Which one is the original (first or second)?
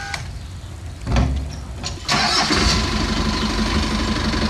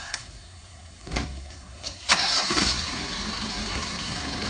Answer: first